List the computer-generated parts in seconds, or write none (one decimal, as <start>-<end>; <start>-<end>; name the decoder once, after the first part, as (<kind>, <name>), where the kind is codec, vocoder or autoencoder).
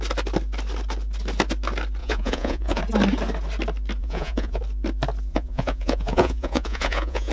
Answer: 2.0-2.8 (vocoder, Vocos); 4.0-4.6; 5.3-7.3